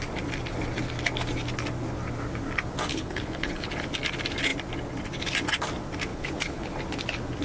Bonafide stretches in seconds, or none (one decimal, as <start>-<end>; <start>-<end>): 0.0-2.9; 3.7-6.1; 6.7-7.4